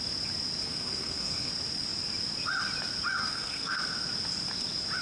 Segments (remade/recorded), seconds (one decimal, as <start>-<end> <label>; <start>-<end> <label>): 0.0-0.6 recorded; 0.6-1.5 remade; 1.5-3.2 recorded; 3.2-3.8 remade; 3.8-5.0 recorded